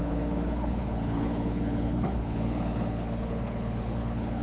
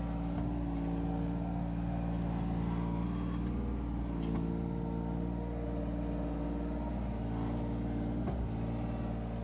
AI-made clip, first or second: first